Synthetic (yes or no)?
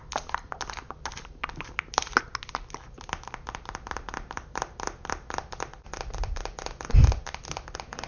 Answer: no